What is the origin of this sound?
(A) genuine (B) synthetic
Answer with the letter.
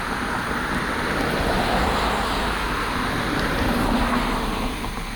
A